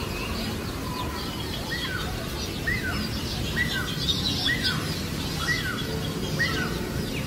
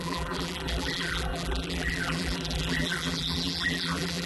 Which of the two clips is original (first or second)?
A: first